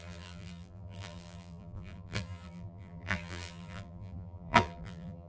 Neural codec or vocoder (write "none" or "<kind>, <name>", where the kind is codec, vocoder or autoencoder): vocoder, BigVGAN v2